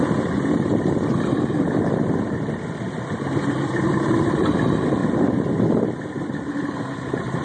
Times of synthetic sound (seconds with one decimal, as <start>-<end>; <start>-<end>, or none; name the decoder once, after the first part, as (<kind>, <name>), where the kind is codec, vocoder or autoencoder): none